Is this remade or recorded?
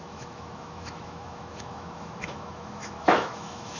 remade